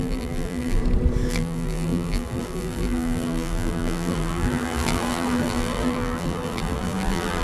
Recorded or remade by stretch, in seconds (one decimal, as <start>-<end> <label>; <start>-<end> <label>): 0.0-0.8 remade; 0.8-1.3 recorded; 1.3-7.4 remade